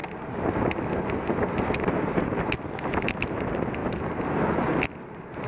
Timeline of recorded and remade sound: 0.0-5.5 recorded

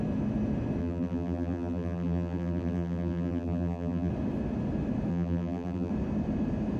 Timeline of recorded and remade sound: 0.0-0.8 recorded; 0.8-4.1 remade; 4.1-5.1 recorded; 5.1-5.9 remade; 5.9-6.8 recorded

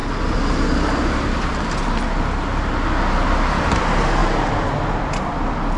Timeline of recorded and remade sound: 0.0-4.2 recorded; 4.2-4.8 remade; 4.8-5.8 recorded